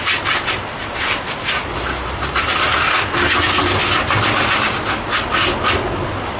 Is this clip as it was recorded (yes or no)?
yes